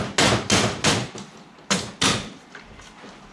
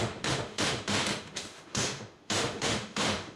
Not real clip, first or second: second